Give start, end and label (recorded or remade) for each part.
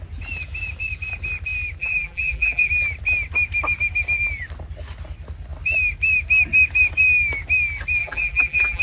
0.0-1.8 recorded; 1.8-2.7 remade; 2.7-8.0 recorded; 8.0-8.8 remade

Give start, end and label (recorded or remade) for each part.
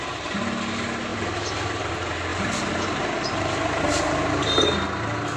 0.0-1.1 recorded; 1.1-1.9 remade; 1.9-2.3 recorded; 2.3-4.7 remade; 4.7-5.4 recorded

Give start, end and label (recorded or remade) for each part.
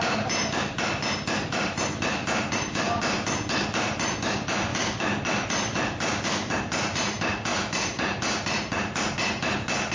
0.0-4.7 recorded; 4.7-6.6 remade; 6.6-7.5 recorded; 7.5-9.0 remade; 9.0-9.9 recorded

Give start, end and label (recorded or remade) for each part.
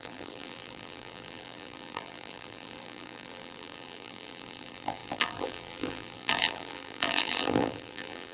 0.0-8.3 remade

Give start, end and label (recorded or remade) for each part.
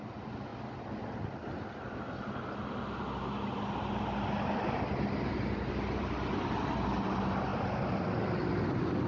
0.0-9.1 recorded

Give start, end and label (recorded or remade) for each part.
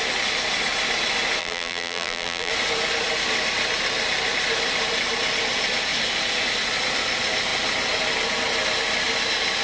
0.0-1.4 recorded; 1.4-2.5 remade; 2.5-9.6 recorded